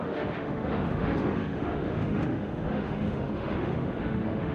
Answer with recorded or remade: remade